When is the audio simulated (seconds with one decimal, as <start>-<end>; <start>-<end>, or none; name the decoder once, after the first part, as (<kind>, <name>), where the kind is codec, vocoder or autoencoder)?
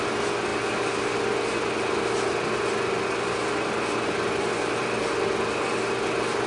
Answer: none